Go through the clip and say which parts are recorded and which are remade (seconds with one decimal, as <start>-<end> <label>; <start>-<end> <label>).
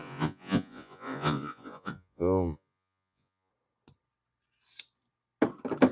0.0-3.5 remade; 3.5-5.9 recorded